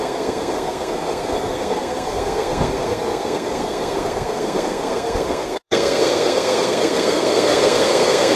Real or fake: fake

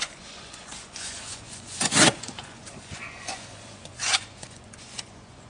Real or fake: fake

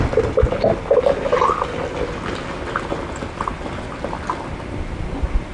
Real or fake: real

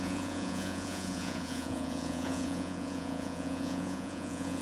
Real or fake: fake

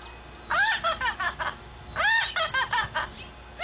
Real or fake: real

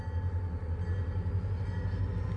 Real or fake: real